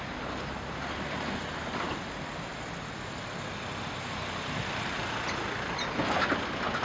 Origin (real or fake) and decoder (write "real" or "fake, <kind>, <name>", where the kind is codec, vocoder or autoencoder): real